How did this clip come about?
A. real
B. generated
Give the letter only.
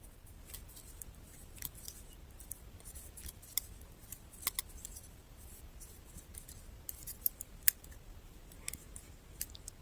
A